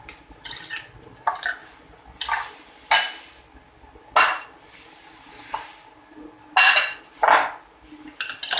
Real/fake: real